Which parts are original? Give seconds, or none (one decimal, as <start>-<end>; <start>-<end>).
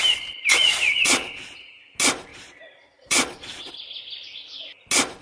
0.0-0.5; 1.7-2.3; 3.7-5.2